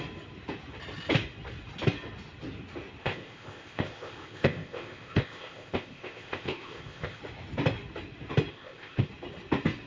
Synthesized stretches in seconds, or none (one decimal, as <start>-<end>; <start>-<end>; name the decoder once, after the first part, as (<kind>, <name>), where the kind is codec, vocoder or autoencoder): 3.0-7.2 (codec, ZipCodec); 8.5-9.1